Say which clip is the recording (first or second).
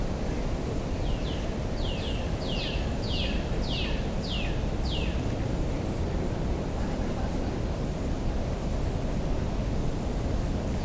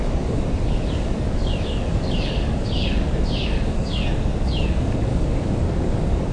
first